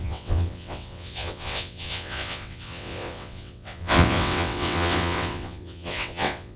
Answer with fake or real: fake